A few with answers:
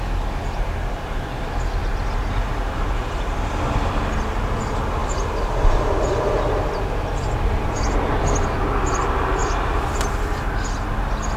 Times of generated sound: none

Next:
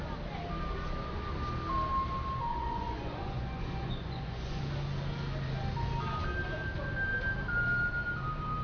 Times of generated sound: 2.5-4.6 (vocoder, Vocos)

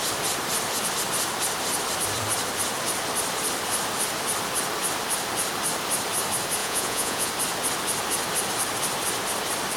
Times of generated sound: 6.6-7.3 (vocoder, Vocos)

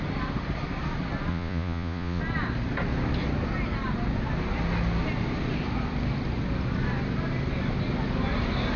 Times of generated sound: 1.3-2.2 (vocoder, Vocos)